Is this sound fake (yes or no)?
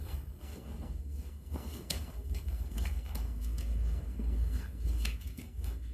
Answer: yes